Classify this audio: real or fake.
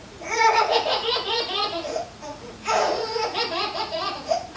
fake